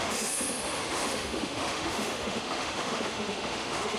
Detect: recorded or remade remade